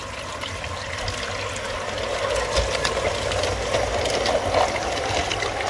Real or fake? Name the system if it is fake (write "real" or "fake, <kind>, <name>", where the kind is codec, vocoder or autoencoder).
real